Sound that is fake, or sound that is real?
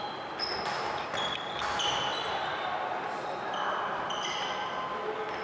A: real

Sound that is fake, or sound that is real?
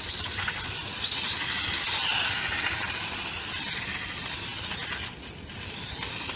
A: real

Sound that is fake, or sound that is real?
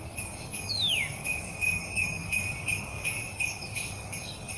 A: fake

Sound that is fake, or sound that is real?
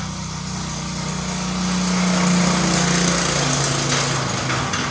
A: real